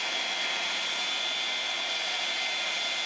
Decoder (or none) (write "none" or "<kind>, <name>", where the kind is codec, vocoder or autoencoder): none